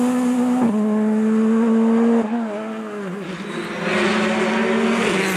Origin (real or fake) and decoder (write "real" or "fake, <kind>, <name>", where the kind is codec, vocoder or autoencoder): real